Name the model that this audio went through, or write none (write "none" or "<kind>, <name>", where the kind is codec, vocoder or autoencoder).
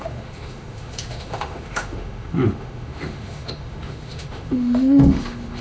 autoencoder, DAC-VAE